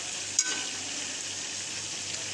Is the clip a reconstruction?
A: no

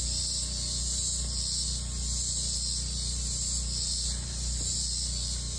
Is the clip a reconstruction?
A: no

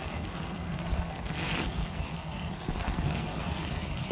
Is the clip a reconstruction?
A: yes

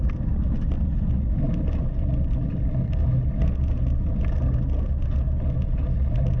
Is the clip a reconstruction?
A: no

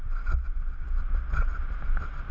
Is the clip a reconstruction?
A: no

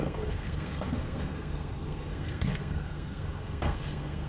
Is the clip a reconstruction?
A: yes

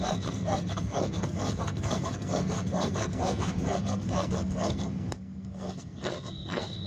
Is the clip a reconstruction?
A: yes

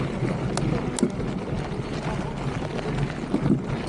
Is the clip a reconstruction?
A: no